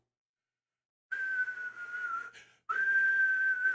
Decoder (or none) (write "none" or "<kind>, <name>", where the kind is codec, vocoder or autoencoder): none